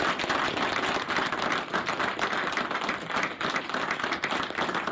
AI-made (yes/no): no